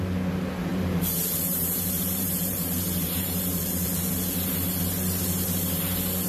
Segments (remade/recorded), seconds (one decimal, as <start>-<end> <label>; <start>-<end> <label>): 0.0-0.7 recorded; 0.7-4.1 remade; 4.1-6.3 recorded